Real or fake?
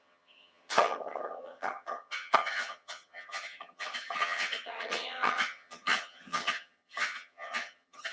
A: fake